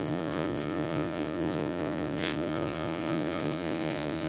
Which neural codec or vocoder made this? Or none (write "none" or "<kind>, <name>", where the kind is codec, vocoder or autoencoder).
vocoder, Vocos